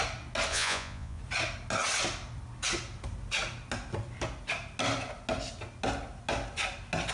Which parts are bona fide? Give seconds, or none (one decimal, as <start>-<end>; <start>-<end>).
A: 0.0-0.5; 1.2-7.1